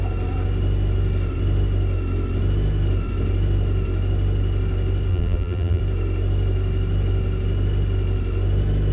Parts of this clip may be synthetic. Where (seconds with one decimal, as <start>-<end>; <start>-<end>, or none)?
5.1-5.8